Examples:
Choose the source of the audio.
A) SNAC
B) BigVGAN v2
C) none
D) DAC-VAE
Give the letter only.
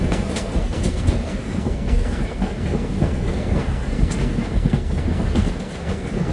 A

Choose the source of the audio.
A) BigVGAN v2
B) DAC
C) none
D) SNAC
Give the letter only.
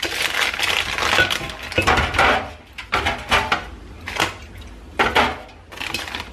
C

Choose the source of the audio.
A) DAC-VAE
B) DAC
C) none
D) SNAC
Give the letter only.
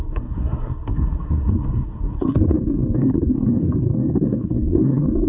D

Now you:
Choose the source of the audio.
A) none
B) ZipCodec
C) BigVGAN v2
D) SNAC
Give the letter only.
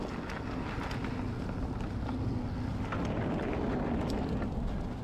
A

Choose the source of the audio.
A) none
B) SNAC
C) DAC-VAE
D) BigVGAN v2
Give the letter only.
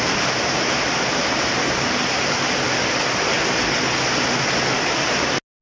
A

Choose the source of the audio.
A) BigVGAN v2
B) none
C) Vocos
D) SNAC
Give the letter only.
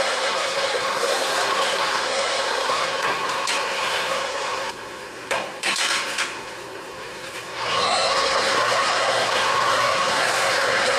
D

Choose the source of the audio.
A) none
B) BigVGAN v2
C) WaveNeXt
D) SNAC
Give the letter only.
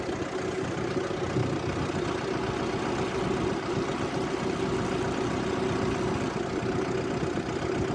A